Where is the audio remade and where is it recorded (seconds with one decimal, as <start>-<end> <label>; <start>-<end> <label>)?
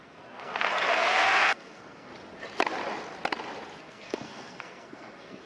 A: 0.0-2.1 remade; 2.1-3.8 recorded; 3.8-5.5 remade